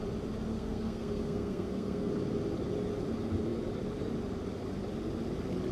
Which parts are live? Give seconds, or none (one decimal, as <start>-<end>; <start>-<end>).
0.0-0.5; 2.1-5.7